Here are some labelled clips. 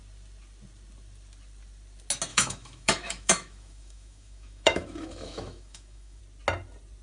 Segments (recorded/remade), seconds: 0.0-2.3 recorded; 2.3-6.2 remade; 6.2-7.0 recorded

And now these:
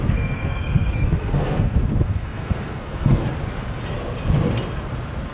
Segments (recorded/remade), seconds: 0.0-3.2 remade; 3.2-5.3 recorded